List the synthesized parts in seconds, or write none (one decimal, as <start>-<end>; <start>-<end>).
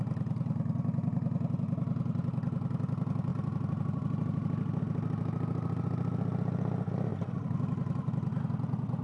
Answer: none